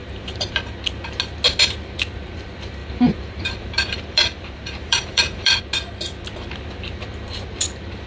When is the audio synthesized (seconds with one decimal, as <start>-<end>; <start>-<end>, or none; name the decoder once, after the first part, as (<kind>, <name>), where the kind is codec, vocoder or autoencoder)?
0.0-0.7 (vocoder, BigVGAN v2); 2.8-5.6